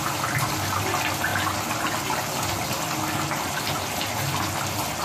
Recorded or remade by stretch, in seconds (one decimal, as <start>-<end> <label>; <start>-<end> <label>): 0.0-5.0 recorded